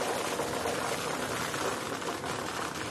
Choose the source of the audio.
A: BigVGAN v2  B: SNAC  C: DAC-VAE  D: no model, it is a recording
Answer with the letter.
D